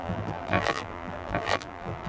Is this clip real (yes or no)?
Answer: no